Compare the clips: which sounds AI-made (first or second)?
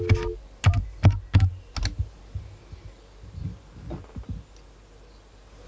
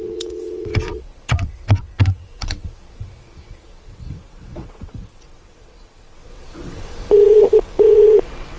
second